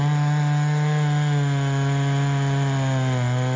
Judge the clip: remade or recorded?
recorded